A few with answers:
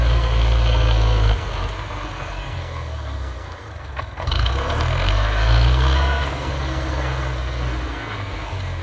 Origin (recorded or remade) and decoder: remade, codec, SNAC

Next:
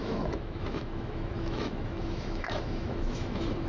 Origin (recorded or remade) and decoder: remade, autoencoder, DAC-VAE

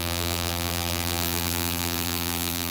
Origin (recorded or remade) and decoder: remade, vocoder, BigVGAN v2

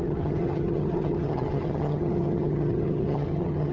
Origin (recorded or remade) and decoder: remade, vocoder, HiFi-GAN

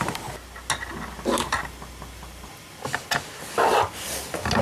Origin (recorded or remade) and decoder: recorded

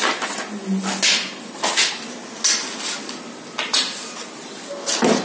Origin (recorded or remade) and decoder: recorded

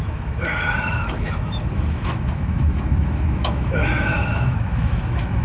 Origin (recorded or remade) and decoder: remade, autoencoder, DAC-VAE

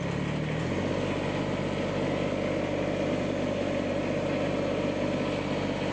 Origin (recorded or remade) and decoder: recorded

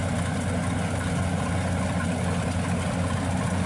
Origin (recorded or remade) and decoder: recorded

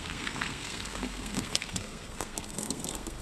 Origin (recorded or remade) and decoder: remade, codec, SNAC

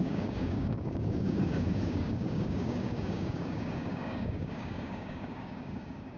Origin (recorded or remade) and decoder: remade, codec, DAC